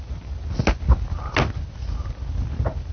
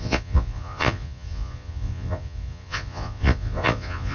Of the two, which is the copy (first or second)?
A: second